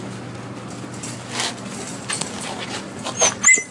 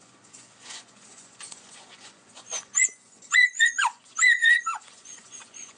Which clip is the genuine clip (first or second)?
first